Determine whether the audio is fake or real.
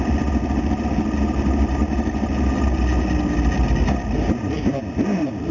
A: real